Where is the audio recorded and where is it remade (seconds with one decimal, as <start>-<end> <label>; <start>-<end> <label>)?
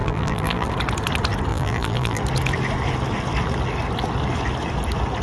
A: 0.0-0.7 remade; 0.7-1.5 recorded; 1.5-2.2 remade; 2.2-5.2 recorded